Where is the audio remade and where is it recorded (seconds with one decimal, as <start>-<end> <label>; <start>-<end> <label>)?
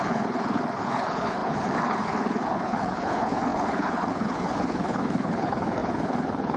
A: 0.0-6.6 remade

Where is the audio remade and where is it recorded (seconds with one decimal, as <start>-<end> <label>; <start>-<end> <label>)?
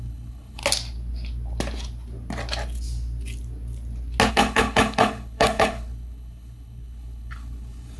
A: 0.0-0.6 remade; 0.6-4.3 recorded; 4.3-8.0 remade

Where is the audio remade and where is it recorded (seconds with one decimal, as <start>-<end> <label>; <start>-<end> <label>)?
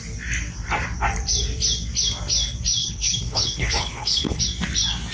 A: 0.0-2.8 recorded; 2.8-4.4 remade; 4.4-5.1 recorded